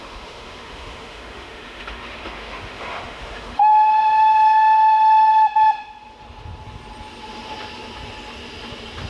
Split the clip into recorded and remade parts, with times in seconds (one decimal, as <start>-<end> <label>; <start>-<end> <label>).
0.0-3.7 remade; 3.7-9.1 recorded